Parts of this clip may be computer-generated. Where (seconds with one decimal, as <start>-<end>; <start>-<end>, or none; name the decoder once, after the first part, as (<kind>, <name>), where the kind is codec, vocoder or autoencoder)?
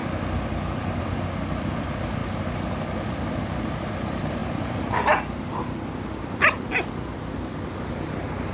0.0-1.0 (vocoder, BigVGAN v2)